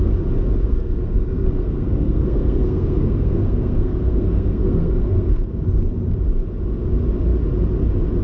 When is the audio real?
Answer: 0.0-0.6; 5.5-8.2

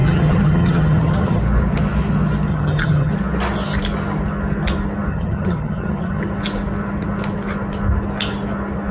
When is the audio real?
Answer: 1.4-2.5; 3.1-5.1; 6.2-8.9

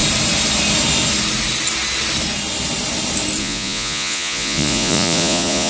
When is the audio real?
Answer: 0.0-3.4

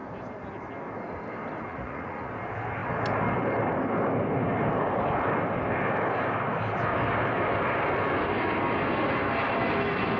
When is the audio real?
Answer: 0.0-1.7; 2.3-10.2

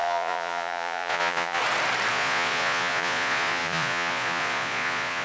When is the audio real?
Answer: 1.6-2.1

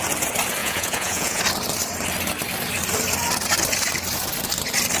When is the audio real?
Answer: 0.0-0.6; 1.4-5.0

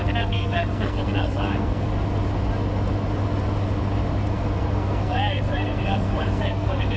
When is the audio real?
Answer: 1.9-4.3